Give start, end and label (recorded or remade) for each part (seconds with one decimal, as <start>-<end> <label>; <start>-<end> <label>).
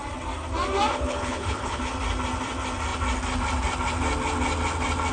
0.0-0.9 recorded; 0.9-1.8 remade; 1.8-5.1 recorded